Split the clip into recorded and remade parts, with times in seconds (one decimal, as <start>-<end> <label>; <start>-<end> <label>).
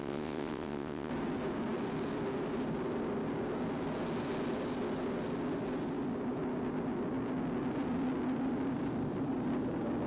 0.0-1.1 remade; 1.1-10.1 recorded